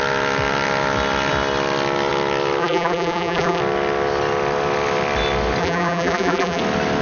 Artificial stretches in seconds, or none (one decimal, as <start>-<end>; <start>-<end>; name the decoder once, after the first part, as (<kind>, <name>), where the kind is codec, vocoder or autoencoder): 2.6-3.6 (vocoder, BigVGAN v2); 5.6-6.6